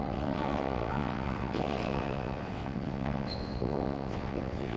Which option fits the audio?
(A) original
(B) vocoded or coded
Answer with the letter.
B